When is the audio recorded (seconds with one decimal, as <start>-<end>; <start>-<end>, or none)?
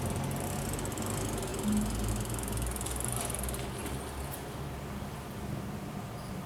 0.0-6.5